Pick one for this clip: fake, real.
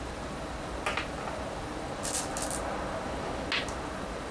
real